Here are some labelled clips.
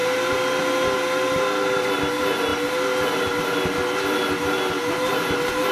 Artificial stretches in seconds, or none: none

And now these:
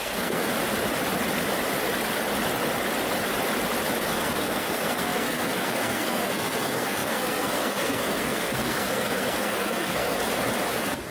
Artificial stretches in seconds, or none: 0.0-0.5 (codec, SNAC); 4.0-10.2; 10.7-11.1